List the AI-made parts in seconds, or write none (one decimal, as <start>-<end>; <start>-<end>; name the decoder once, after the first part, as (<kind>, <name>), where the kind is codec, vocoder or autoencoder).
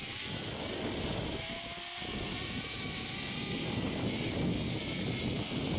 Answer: 2.3-2.8 (vocoder, Vocos)